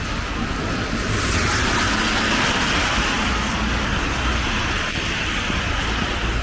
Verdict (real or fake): real